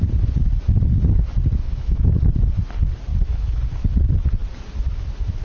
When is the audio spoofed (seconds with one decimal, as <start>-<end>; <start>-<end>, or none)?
1.6-2.2; 3.1-3.6